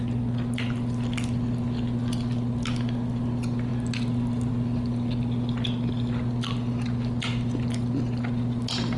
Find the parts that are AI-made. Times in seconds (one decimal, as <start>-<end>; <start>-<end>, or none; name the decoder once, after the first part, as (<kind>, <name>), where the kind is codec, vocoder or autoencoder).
none